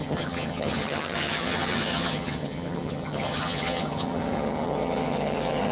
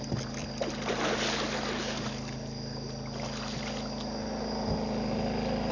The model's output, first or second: first